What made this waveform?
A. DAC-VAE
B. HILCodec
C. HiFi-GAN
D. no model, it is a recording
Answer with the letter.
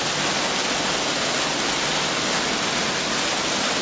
D